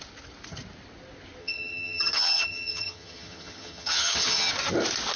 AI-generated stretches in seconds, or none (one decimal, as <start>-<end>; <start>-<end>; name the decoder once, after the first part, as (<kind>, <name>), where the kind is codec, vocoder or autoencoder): 1.4-4.5 (vocoder, HiFi-GAN)